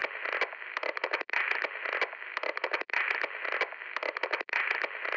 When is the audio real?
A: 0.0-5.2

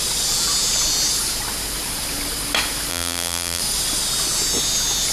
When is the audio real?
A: 0.0-2.9; 3.6-5.1

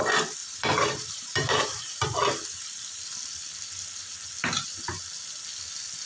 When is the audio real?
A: 0.0-0.4; 2.3-6.1

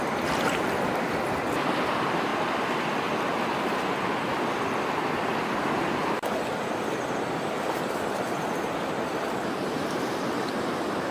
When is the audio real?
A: 0.0-11.1